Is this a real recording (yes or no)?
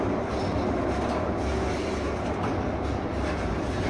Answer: yes